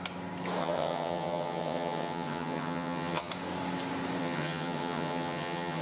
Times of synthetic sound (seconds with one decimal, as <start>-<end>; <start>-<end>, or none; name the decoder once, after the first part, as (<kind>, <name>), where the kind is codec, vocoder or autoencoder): 0.6-3.3 (vocoder, HiFi-GAN); 4.2-5.8